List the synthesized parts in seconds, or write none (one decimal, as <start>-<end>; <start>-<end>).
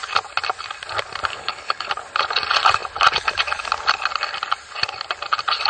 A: 1.3-1.9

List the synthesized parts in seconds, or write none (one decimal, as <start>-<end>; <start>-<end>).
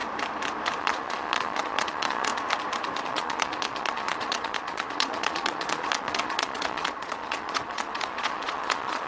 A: 0.8-2.3; 3.0-9.1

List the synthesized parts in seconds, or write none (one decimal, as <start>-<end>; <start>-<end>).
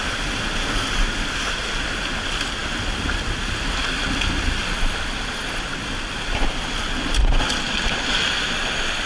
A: none